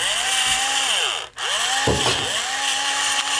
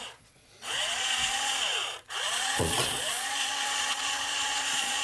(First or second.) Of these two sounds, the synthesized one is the second